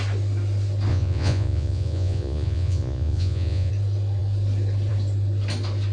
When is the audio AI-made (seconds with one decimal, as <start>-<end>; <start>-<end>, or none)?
0.9-3.7